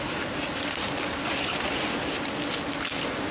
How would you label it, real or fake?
real